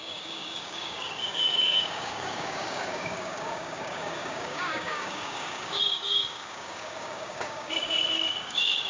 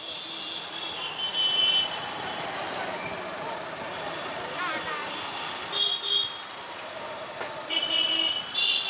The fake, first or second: first